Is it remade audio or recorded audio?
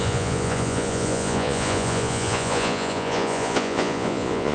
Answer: remade